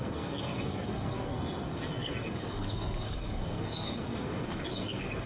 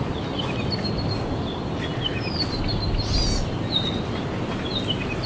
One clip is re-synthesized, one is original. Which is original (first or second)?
second